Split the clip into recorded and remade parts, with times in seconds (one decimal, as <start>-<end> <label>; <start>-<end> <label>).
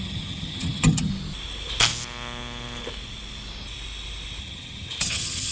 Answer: 0.0-1.1 remade; 1.1-4.4 recorded; 4.4-5.5 remade